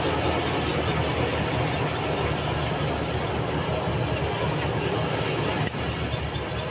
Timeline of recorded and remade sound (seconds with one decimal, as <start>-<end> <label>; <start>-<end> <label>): 0.0-6.7 recorded